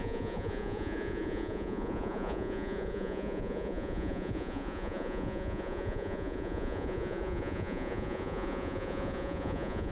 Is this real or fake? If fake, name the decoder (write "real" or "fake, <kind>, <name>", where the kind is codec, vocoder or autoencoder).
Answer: fake, vocoder, Vocos